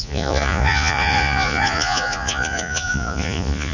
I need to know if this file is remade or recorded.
remade